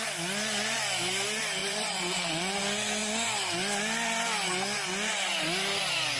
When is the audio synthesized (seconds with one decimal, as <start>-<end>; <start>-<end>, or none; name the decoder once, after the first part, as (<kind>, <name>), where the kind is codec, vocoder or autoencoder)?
1.6-2.6 (vocoder, Vocos)